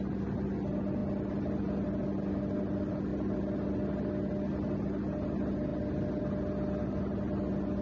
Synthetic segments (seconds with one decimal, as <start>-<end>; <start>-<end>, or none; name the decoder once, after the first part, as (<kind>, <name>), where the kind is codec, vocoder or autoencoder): none